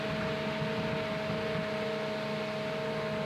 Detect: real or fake real